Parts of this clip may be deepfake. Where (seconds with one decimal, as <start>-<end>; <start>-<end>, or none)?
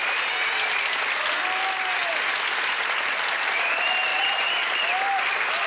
4.1-4.8